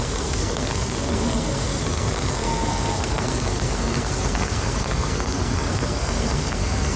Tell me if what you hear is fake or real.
fake